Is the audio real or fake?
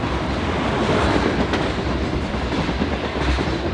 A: real